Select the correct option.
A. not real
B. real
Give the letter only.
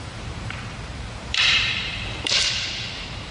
A